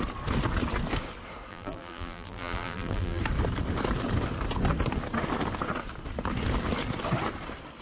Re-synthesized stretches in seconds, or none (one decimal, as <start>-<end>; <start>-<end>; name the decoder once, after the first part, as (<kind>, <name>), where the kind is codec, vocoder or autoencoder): 1.5-3.2 (vocoder, BigVGAN v2)